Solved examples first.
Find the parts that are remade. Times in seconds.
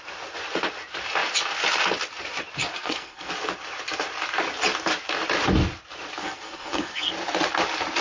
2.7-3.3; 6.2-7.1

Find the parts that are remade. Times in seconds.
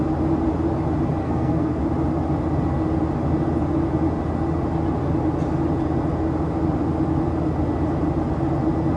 1.2-1.8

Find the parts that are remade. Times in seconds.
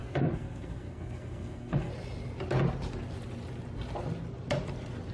0.0-1.9